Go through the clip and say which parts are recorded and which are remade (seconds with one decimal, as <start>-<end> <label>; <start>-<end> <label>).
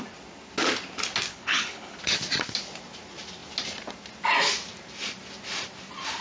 0.0-1.3 recorded; 1.3-2.0 remade; 2.0-6.2 recorded